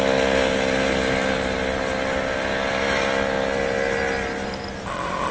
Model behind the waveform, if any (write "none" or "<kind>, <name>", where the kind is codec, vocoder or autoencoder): none